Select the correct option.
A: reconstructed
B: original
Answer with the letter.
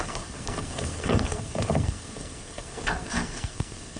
A